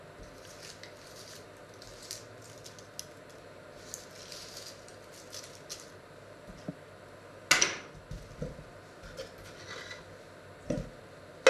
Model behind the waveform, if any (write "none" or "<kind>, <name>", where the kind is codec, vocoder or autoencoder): none